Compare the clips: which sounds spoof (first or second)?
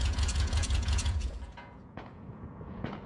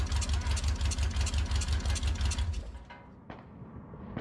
first